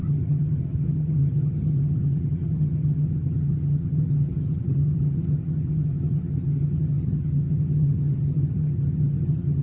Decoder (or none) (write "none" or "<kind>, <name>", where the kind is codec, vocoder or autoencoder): vocoder, HiFi-GAN